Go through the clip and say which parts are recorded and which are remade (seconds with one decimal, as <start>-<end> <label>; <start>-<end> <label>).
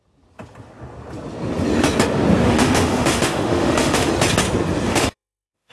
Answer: 0.0-2.4 recorded; 2.4-4.1 remade; 4.1-4.9 recorded; 4.9-5.7 remade